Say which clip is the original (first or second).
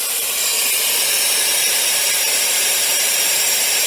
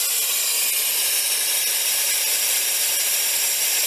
second